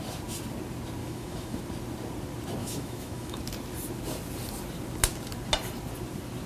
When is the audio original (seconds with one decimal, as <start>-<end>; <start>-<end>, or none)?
0.0-1.0; 1.6-2.6; 3.4-6.5